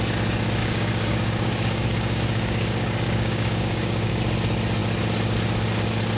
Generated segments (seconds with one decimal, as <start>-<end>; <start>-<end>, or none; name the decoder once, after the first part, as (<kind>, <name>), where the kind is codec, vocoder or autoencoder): 0.6-4.1 (codec, DAC)